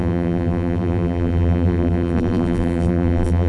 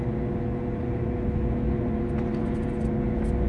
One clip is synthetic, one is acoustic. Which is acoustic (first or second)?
second